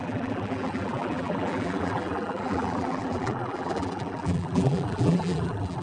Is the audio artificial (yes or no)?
yes